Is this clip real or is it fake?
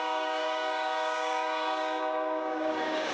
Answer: fake